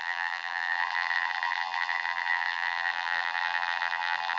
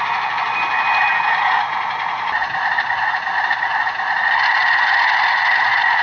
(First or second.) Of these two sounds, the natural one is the second